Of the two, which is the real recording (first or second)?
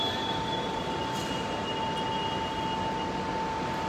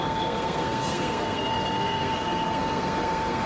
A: first